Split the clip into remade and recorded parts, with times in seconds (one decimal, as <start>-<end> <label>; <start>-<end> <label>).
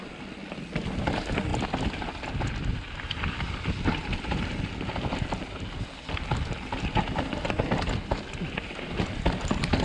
0.0-9.8 recorded